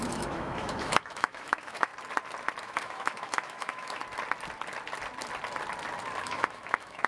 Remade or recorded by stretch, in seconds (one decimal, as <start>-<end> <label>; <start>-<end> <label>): 0.0-1.9 remade; 1.9-2.6 recorded; 2.6-4.0 remade; 4.0-6.2 recorded; 6.2-7.1 remade